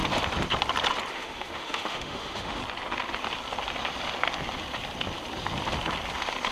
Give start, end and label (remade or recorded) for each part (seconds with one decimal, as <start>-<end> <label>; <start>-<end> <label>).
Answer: 0.0-1.1 recorded; 1.1-2.6 remade; 2.6-6.5 recorded